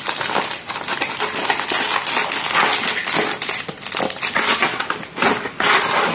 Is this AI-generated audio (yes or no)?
no